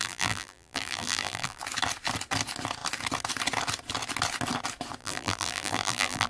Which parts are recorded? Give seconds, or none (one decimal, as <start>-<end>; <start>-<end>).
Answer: 1.6-5.0